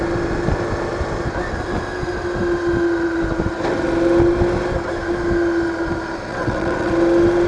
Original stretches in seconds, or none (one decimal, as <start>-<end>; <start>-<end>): 0.0-6.3; 6.9-7.5